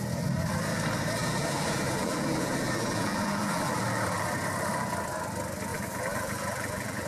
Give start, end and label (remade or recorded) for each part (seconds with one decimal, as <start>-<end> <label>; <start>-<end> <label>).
0.0-1.2 recorded; 1.2-4.2 remade; 4.2-5.7 recorded; 5.7-7.1 remade